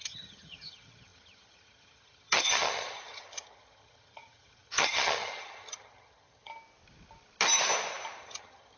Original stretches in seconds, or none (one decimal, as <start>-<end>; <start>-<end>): 6.5-8.2